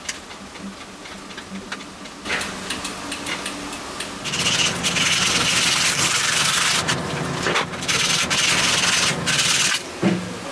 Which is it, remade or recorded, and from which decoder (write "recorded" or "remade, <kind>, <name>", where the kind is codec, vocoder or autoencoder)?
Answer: recorded